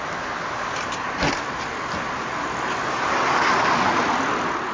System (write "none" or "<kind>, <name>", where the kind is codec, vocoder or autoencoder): none